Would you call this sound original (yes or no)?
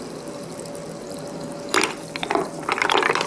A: yes